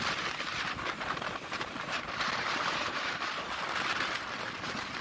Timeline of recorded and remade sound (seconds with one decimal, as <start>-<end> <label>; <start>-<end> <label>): 0.0-0.5 recorded; 0.5-3.3 remade; 3.3-5.0 recorded